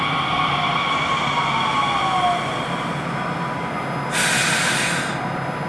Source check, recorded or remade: recorded